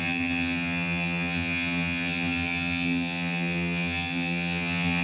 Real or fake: fake